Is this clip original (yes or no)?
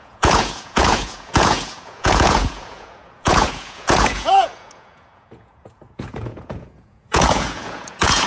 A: no